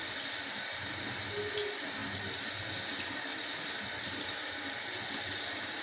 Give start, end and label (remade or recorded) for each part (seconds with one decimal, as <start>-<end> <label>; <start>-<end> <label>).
0.0-5.8 recorded